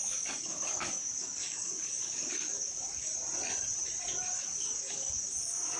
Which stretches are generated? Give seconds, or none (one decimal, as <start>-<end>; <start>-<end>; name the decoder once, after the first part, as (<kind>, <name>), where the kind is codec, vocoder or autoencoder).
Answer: 0.0-3.1 (codec, DAC); 4.4-5.8